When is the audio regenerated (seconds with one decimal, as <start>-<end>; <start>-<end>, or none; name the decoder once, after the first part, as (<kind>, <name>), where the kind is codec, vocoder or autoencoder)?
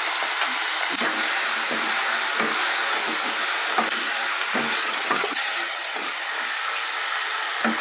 4.8-6.3 (vocoder, HiFi-GAN)